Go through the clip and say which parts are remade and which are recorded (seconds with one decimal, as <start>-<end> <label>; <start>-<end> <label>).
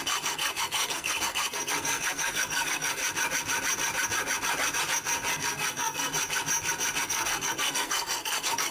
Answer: 0.0-3.0 remade; 3.0-5.3 recorded; 5.3-6.1 remade; 6.1-7.0 recorded; 7.0-8.7 remade